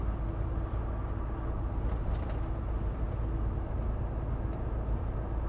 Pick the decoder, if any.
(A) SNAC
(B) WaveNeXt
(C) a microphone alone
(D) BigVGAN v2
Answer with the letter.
C